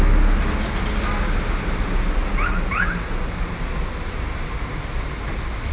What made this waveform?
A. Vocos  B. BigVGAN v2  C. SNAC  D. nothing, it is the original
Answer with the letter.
D